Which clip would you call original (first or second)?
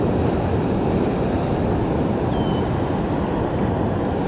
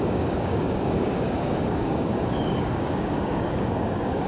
first